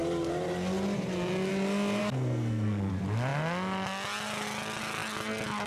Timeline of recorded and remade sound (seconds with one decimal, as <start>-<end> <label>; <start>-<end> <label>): 0.0-2.0 recorded; 2.0-2.9 remade; 2.9-5.7 recorded